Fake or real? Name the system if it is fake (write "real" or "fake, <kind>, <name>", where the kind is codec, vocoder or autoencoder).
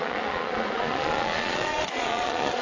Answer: fake, vocoder, Vocos